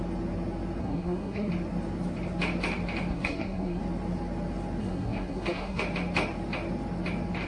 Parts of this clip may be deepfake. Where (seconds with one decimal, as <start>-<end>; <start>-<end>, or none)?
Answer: 0.8-1.5; 3.1-3.8; 4.8-5.8